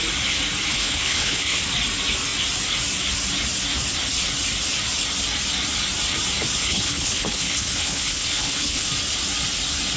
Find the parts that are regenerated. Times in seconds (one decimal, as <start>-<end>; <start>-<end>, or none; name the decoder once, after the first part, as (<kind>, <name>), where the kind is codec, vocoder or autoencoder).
0.7-1.6 (codec, HILCodec); 6.6-8.9